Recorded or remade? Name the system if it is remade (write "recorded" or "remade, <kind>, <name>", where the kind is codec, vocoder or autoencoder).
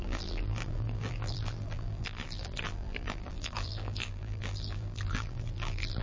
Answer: remade, vocoder, BigVGAN v2